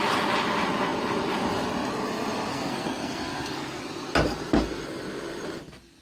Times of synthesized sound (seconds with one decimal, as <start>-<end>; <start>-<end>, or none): 2.5-3.8